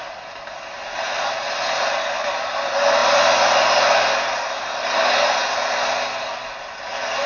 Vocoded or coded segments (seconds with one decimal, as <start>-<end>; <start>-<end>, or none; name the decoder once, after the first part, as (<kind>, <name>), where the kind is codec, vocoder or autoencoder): none